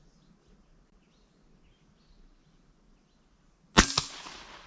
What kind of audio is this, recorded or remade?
recorded